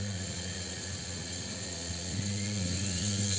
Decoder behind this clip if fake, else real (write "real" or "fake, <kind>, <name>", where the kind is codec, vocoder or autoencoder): fake, vocoder, Vocos